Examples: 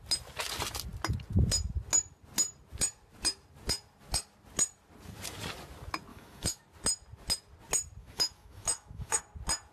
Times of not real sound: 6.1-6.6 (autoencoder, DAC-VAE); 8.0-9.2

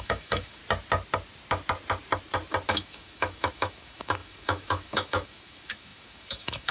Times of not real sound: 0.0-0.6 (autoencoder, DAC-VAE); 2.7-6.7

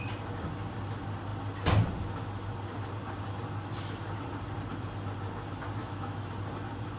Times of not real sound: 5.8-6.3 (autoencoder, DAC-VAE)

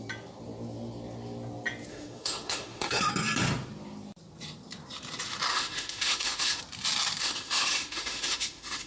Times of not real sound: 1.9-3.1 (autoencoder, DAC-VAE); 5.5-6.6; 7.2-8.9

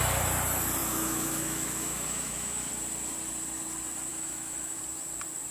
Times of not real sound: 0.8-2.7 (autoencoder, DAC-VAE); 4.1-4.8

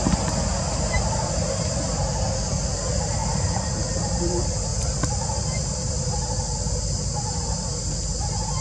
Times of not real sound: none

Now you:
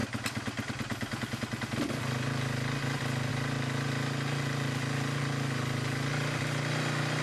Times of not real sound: none